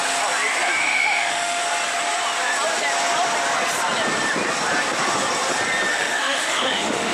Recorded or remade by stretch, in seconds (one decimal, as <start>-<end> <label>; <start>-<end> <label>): 0.0-0.8 recorded; 0.8-1.6 remade; 1.6-5.9 recorded; 5.9-7.1 remade